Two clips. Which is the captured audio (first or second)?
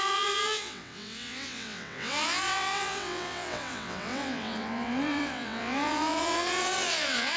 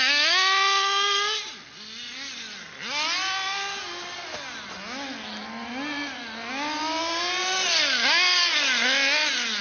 second